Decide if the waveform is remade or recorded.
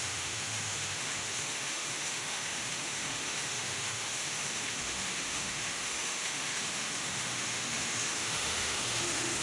remade